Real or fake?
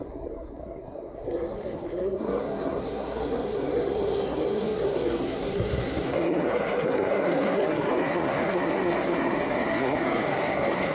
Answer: fake